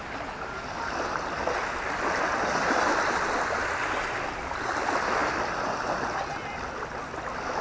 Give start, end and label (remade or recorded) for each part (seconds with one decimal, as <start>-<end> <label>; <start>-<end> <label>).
0.0-7.6 recorded